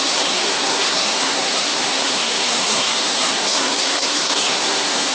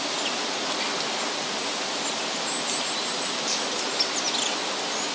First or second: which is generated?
first